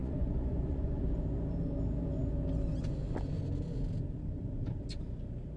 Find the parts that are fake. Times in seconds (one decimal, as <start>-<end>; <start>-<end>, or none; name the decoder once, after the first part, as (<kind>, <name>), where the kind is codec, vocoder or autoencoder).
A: 0.0-1.0 (vocoder, Vocos)